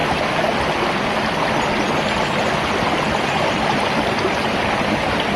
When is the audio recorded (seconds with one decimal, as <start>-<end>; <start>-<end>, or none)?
0.0-3.2